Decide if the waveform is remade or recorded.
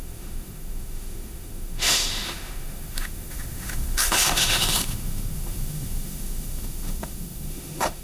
remade